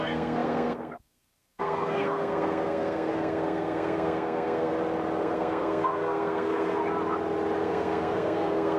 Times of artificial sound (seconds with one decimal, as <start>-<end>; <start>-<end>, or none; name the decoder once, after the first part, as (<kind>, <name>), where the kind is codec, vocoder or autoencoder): 0.0-4.7 (codec, SNAC); 5.2-6.8; 7.6-8.8